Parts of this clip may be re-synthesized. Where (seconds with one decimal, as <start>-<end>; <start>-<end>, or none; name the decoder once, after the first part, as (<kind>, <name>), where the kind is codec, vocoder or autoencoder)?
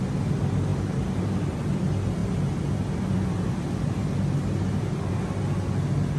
none